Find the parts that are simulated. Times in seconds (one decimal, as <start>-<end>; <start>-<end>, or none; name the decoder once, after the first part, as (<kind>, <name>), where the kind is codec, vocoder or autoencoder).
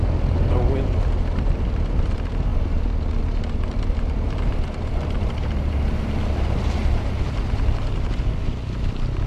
0.0-2.5 (vocoder, BigVGAN v2); 3.5-6.8; 8.3-9.3